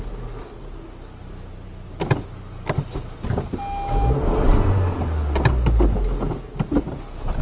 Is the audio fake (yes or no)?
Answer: no